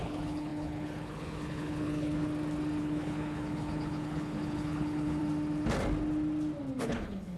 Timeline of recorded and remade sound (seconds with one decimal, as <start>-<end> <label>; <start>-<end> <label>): 0.0-2.3 remade; 2.3-2.8 recorded; 2.8-5.2 remade; 5.2-6.8 recorded; 6.8-7.4 remade